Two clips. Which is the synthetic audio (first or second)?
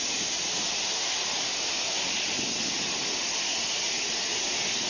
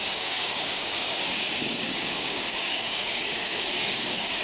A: second